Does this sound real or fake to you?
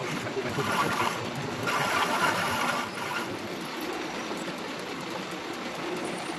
real